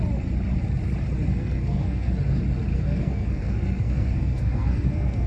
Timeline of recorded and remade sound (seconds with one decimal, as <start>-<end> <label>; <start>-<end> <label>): 0.0-1.3 recorded; 1.3-2.1 remade; 2.1-2.7 recorded; 2.7-5.3 remade